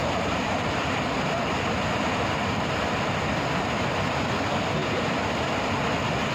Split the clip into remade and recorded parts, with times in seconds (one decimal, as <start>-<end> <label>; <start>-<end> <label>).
0.0-3.0 remade; 3.0-4.8 recorded; 4.8-5.3 remade; 5.3-6.3 recorded